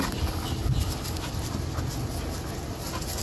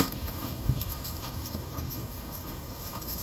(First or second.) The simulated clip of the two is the second